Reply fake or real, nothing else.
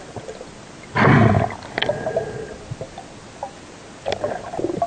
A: real